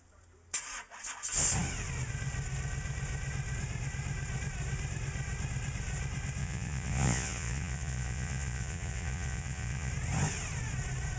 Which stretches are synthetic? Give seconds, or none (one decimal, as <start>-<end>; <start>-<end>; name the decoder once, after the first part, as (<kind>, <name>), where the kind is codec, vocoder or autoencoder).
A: 6.4-9.9 (vocoder, Vocos)